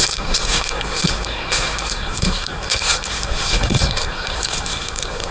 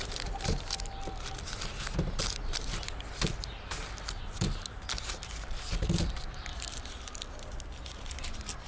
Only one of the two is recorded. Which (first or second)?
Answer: second